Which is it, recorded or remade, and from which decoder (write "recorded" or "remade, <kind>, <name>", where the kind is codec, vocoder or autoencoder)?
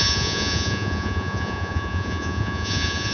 remade, vocoder, Vocos